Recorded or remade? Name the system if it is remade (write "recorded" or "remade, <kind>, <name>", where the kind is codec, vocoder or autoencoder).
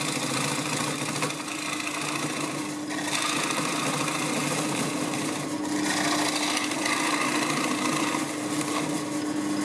recorded